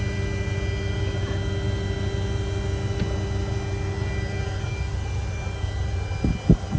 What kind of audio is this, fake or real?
real